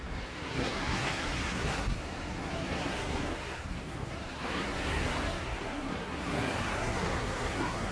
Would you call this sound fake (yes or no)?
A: yes